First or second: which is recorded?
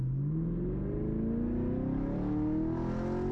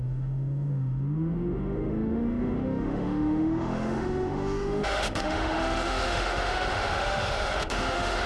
first